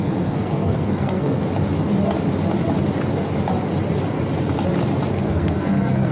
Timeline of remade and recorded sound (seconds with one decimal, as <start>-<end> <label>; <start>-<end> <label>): 0.0-1.4 remade; 1.4-5.1 recorded; 5.1-6.1 remade